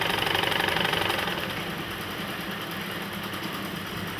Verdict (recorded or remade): recorded